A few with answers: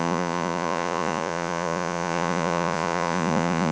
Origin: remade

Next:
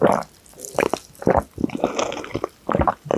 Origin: recorded